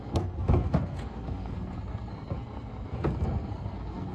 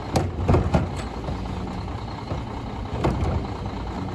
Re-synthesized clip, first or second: first